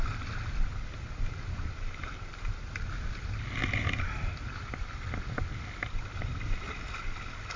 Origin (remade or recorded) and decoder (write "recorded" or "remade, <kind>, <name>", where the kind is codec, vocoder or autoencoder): recorded